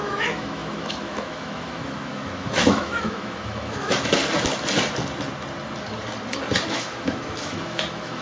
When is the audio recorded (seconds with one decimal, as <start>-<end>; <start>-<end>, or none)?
4.2-6.7